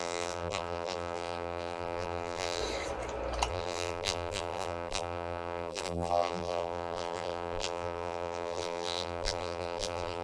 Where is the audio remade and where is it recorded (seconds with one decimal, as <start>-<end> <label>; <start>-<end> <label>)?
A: 0.0-2.6 remade; 2.6-3.5 recorded; 3.5-10.2 remade